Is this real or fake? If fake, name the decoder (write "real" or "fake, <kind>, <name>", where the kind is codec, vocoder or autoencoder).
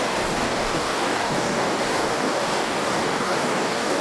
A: fake, codec, DAC